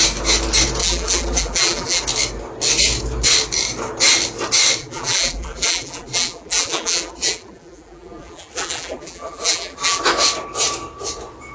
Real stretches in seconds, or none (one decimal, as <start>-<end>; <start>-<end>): 0.0-0.8; 2.0-4.8; 10.0-11.5